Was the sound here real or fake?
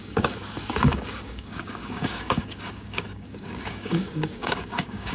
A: fake